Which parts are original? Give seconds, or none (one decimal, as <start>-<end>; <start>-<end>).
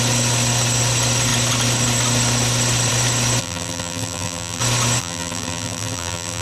0.0-3.4; 4.6-5.0